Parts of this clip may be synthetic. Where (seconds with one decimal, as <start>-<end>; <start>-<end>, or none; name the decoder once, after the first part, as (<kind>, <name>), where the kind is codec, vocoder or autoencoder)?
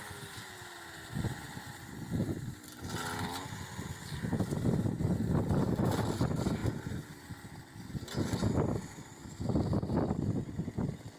none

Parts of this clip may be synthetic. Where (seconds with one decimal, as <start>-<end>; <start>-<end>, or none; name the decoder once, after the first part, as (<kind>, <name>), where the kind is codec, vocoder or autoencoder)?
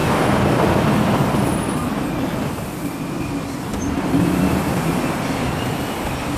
0.0-3.3 (vocoder, BigVGAN v2); 3.7-4.9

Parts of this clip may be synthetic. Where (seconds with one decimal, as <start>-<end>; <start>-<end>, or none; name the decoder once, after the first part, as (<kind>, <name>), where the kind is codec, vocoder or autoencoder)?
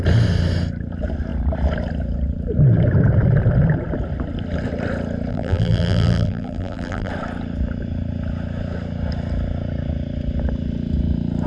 5.3-7.1 (vocoder, BigVGAN v2)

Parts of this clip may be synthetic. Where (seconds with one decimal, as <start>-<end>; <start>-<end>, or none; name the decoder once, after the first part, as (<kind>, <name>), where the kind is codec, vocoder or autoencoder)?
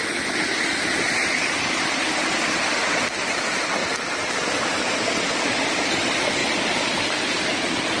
3.8-5.0 (vocoder, BigVGAN v2); 6.4-7.5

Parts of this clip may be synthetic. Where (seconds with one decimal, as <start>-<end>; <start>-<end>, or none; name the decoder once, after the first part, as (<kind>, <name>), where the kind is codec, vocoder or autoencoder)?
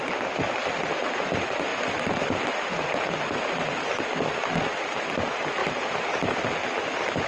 5.6-6.4 (vocoder, BigVGAN v2)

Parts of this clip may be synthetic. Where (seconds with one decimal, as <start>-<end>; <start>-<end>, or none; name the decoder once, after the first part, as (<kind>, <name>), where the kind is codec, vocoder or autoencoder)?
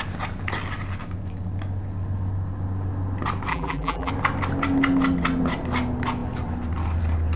3.5-4.1 (vocoder, BigVGAN v2)